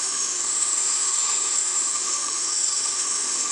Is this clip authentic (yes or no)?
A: no